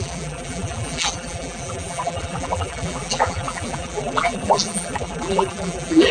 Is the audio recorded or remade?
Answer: remade